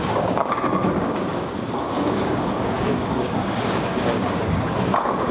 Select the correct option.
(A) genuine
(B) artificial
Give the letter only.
B